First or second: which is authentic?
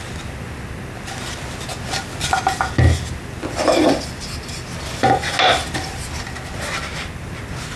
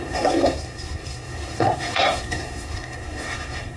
first